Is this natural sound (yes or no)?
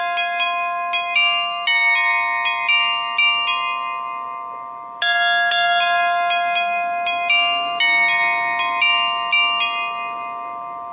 yes